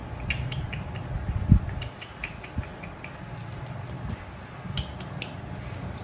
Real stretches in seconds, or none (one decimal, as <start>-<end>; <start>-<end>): 3.6-6.0